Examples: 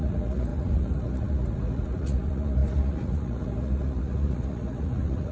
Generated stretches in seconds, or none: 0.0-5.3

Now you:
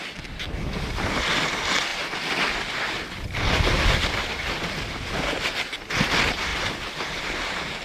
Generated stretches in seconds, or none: none

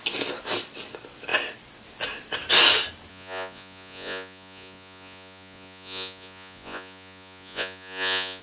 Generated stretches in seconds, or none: 3.1-8.4

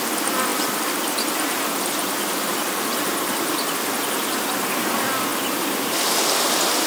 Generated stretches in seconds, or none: 0.0-5.3; 6.4-6.9

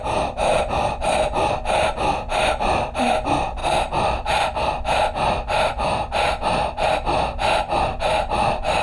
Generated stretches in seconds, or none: 3.6-4.7

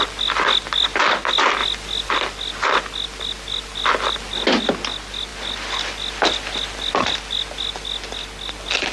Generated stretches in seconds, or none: none

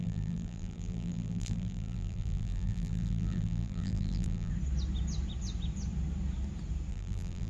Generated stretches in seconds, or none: 0.0-4.5; 6.9-7.5